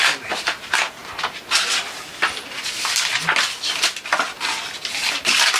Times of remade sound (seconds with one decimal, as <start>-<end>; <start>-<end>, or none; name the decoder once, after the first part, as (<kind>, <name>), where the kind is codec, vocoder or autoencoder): none